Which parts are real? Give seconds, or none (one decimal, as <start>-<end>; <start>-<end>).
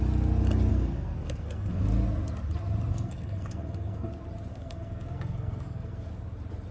0.0-0.7; 1.8-2.9; 4.1-4.5; 6.1-6.7